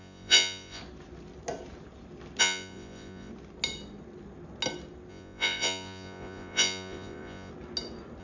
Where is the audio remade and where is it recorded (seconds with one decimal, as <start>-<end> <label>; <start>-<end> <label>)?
0.0-0.8 remade; 0.8-2.4 recorded; 2.4-3.3 remade; 3.3-5.1 recorded; 5.1-7.5 remade; 7.5-8.2 recorded